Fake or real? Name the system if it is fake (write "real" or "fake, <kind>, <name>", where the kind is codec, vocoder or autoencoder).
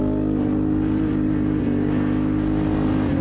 real